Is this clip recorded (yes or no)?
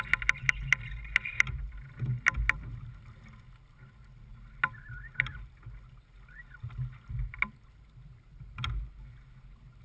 yes